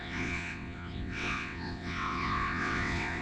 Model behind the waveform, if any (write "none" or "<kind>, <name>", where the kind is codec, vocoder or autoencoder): vocoder, WaveNeXt